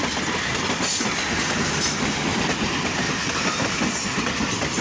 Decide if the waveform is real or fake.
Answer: real